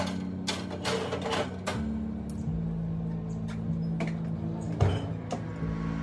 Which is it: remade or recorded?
recorded